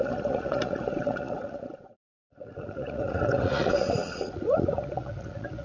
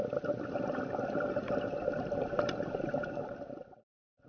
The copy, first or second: first